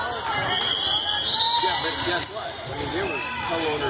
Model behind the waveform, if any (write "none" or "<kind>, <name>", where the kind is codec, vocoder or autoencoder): none